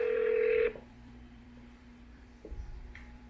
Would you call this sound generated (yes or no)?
yes